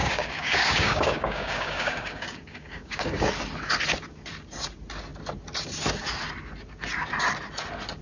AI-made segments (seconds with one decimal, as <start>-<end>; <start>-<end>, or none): 0.0-3.3

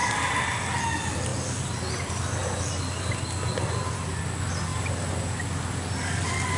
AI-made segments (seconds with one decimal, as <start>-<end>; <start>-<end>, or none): 1.3-1.9; 2.4-4.1; 4.7-6.6

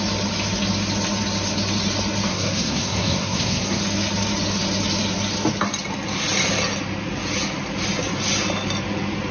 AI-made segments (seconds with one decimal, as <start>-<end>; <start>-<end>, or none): 2.3-3.8

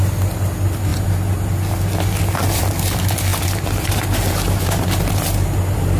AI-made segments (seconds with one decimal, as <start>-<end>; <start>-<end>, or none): none

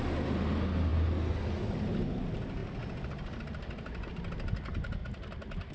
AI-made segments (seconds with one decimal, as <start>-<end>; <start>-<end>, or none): 5.0-5.7

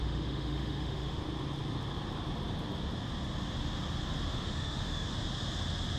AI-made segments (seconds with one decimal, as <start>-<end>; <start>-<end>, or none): 0.0-1.2; 4.3-5.1

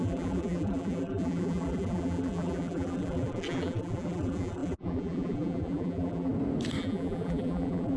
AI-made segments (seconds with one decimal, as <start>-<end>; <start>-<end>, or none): 0.0-6.3; 6.8-8.0

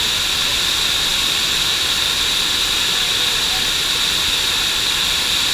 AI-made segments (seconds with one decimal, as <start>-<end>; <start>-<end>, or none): 1.1-4.4